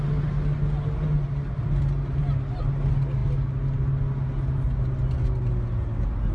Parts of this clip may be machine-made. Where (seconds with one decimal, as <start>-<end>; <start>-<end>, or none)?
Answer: none